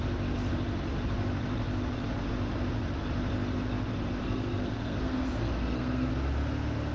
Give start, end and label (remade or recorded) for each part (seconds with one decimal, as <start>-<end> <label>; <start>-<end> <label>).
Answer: 0.0-4.2 recorded; 4.2-6.1 remade; 6.1-6.9 recorded